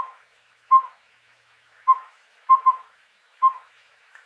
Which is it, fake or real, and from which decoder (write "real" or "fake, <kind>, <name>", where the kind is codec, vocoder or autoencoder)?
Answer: fake, autoencoder, DAC-VAE